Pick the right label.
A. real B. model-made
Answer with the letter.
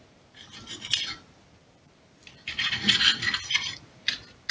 A